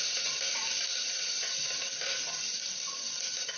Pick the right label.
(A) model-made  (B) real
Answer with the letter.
B